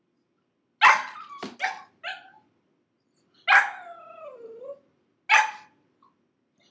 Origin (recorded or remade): recorded